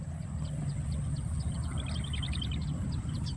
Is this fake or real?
real